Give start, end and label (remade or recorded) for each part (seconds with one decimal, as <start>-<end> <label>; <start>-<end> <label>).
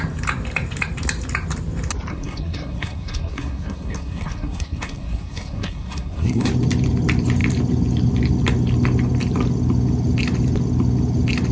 0.0-2.1 recorded; 2.1-6.5 remade; 6.5-11.5 recorded